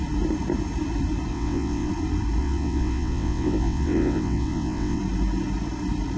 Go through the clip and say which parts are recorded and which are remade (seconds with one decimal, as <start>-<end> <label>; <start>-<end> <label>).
0.0-1.3 recorded; 1.3-1.9 remade; 1.9-2.4 recorded; 2.4-5.0 remade; 5.0-6.2 recorded